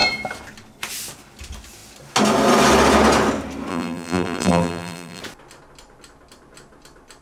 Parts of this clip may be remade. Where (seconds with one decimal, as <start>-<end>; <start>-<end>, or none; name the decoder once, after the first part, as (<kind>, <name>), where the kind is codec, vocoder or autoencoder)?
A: 3.7-5.2 (vocoder, BigVGAN v2)